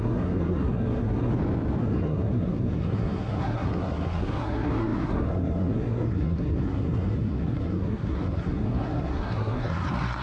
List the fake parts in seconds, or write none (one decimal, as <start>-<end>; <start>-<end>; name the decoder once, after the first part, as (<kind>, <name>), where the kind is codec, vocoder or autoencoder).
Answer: 0.0-1.3 (codec, SNAC); 1.8-10.2